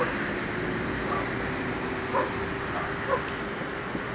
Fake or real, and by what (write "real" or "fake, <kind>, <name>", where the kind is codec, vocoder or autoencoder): real